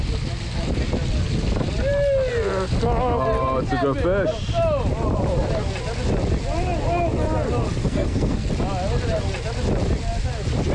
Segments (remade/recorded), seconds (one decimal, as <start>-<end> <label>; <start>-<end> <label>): 0.0-7.8 recorded; 7.8-8.5 remade; 8.5-10.7 recorded